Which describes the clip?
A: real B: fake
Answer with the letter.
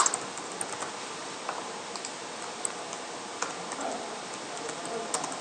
A